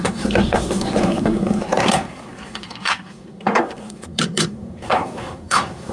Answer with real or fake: fake